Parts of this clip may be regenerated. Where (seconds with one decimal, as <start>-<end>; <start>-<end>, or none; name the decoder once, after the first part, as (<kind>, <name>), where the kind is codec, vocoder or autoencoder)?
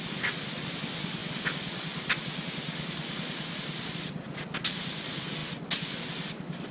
none